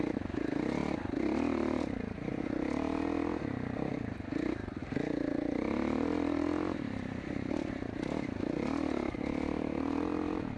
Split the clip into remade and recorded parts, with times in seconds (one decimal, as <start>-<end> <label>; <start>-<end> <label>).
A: 0.0-0.8 recorded; 0.8-1.8 remade; 1.8-4.8 recorded; 4.8-7.7 remade; 7.7-10.6 recorded